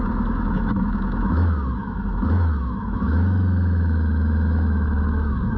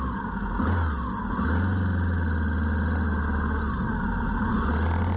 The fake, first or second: first